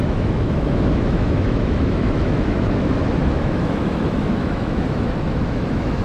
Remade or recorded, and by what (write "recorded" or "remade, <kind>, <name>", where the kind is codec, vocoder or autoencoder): remade, autoencoder, DAC-VAE